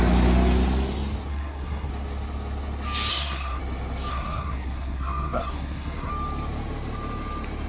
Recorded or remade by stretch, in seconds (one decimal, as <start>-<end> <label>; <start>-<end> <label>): 0.0-1.3 recorded; 1.3-1.9 remade; 1.9-3.1 recorded; 3.1-3.6 remade; 3.6-4.1 recorded; 4.1-6.1 remade; 6.1-7.7 recorded